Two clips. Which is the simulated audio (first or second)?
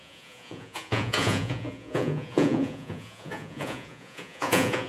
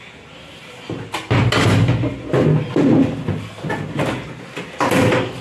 first